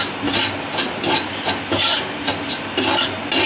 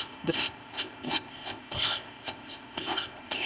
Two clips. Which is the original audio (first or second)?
first